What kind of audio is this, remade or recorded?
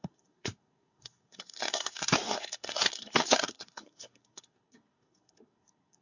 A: remade